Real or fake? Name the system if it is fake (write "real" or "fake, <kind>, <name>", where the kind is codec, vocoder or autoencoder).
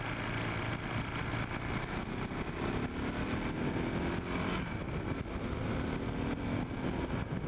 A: real